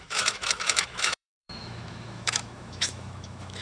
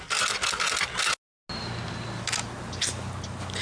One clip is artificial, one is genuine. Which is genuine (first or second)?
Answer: second